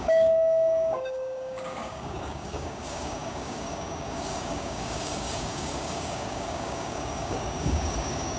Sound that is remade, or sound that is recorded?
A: remade